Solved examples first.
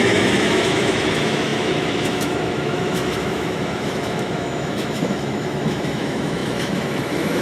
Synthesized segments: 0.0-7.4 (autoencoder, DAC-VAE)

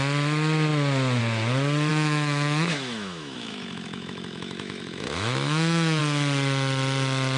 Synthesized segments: 1.9-6.0 (autoencoder, DAC-VAE)